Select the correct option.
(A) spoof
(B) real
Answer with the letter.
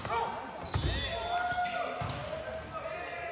B